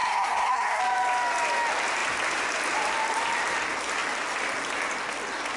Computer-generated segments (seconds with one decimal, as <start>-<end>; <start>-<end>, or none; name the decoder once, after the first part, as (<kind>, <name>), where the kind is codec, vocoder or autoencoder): 0.0-0.8 (codec, SNAC)